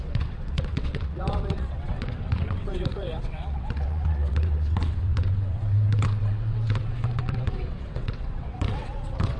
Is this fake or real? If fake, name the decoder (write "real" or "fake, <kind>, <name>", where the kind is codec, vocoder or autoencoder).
fake, vocoder, WaveNeXt